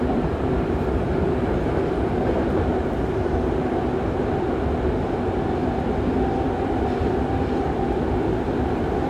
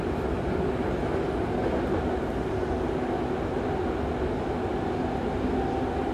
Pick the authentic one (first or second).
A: second